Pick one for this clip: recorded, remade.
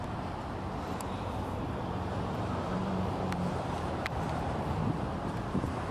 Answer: remade